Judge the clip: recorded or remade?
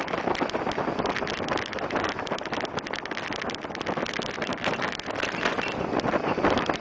recorded